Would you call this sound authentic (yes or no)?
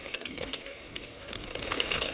no